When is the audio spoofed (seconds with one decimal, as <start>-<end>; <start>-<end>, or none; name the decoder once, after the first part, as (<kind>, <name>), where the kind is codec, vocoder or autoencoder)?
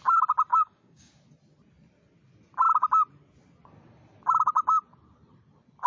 0.5-1.1 (codec, DAC)